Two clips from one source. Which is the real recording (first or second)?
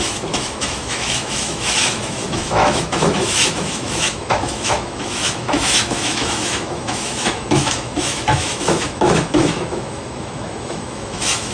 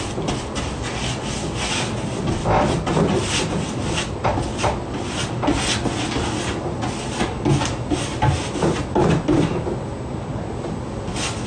second